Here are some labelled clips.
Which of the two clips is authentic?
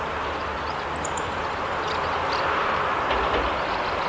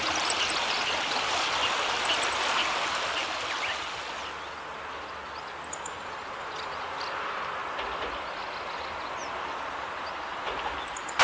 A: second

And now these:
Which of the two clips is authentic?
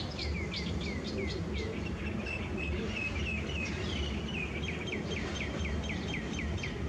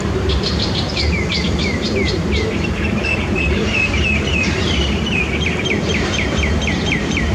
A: first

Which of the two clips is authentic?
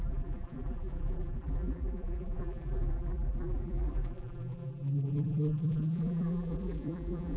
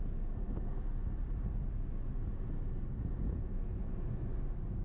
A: second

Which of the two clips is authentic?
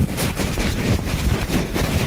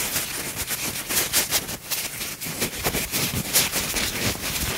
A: second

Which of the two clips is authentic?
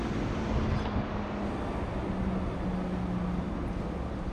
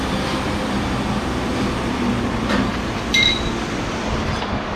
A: first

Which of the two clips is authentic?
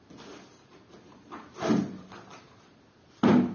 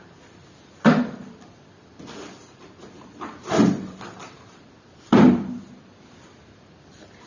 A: first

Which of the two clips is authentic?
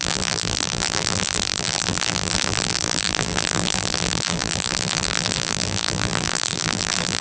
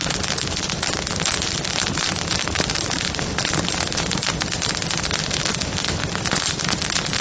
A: second